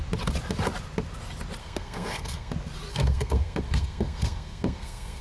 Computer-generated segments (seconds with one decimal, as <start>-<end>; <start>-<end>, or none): 1.6-2.5; 2.9-5.2